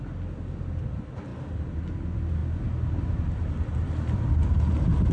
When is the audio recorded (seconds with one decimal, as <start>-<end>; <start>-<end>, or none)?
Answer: 0.0-5.1